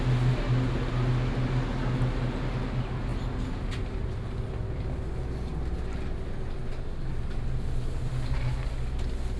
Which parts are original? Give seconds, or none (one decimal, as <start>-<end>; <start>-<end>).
0.0-9.4